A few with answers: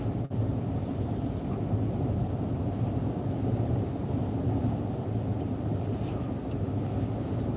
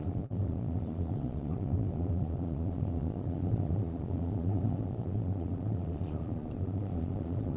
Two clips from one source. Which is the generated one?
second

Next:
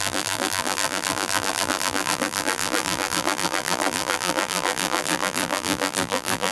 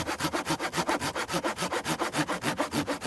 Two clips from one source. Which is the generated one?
first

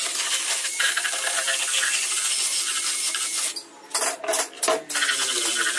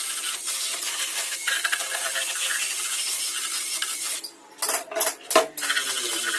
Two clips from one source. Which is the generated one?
second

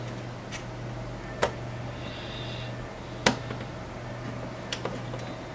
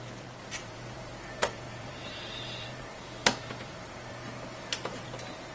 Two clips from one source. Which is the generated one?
second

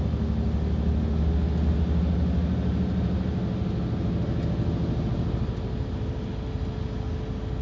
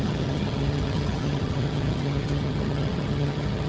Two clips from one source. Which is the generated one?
second